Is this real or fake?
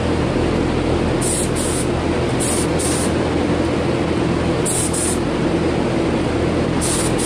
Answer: real